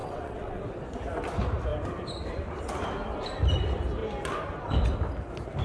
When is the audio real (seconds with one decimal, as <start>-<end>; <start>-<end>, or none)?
0.6-5.6